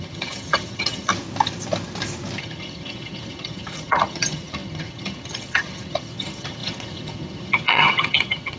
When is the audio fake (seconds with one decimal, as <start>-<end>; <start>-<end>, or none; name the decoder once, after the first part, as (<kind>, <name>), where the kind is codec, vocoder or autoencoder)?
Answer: 0.0-1.1 (vocoder, HiFi-GAN); 2.4-8.6